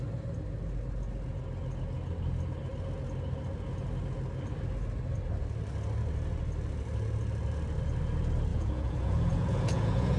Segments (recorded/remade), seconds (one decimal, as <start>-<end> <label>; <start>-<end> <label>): 0.0-8.5 recorded; 8.5-10.2 remade